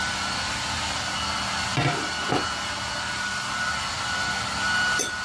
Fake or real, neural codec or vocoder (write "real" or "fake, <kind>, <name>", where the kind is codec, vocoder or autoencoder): real